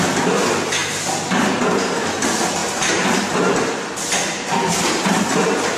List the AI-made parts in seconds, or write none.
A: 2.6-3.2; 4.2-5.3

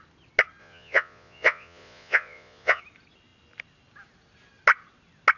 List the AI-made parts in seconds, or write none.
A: 0.6-2.8

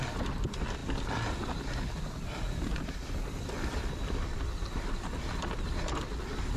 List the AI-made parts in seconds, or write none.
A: none

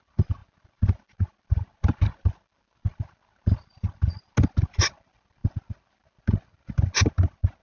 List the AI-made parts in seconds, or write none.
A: none